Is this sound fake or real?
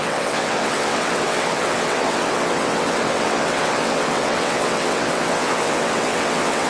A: fake